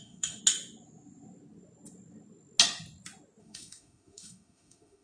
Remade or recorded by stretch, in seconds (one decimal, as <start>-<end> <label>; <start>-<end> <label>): 0.0-0.4 remade; 0.4-3.4 recorded; 3.4-5.0 remade